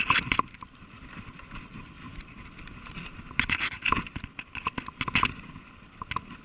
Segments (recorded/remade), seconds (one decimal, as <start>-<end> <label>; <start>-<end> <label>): 0.0-6.4 recorded